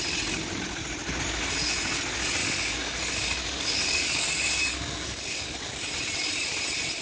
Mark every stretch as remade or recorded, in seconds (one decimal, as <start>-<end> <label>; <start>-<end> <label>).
0.0-2.4 recorded; 2.4-5.9 remade; 5.9-7.0 recorded